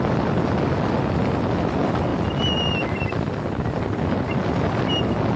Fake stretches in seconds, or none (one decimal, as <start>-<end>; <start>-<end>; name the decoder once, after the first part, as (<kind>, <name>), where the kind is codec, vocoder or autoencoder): none

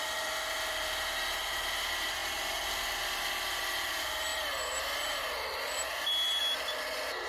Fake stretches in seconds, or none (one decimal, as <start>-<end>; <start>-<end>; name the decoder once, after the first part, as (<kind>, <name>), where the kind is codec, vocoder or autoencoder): none